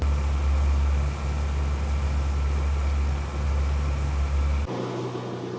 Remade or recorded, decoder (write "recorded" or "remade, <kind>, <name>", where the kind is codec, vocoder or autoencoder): recorded